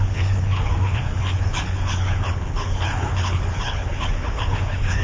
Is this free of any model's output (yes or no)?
no